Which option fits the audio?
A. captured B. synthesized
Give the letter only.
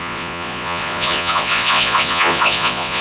B